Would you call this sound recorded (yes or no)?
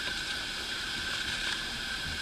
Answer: no